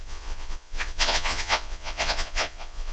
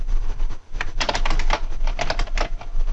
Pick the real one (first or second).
second